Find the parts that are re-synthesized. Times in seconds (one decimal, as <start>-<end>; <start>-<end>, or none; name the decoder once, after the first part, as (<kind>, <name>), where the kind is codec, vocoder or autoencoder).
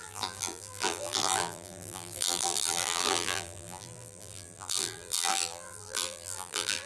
0.0-6.9 (vocoder, BigVGAN v2)